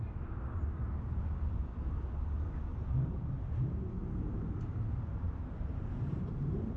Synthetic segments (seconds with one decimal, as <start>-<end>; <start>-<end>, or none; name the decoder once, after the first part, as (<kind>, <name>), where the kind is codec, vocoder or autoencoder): 2.7-6.8 (vocoder, BigVGAN v2)